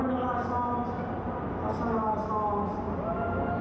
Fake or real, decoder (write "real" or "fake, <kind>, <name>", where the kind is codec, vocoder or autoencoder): real